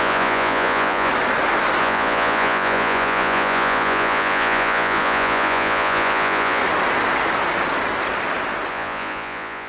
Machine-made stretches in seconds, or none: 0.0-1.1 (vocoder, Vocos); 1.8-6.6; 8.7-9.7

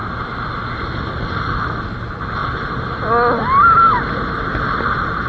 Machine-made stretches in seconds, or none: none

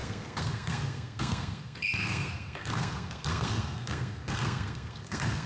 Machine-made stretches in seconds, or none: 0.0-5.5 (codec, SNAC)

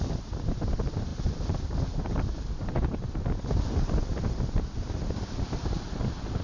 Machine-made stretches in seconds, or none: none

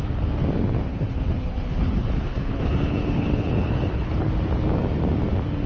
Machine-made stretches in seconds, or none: 0.9-4.3 (codec, HILCodec)

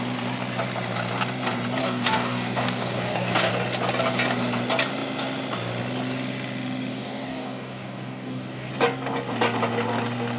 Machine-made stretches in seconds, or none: 1.8-3.5 (codec, DAC); 6.9-8.7

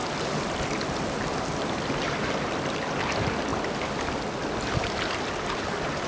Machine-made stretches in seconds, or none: none